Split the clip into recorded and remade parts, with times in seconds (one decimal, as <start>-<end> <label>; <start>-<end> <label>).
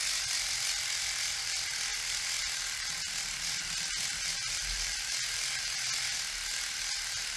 0.0-7.4 recorded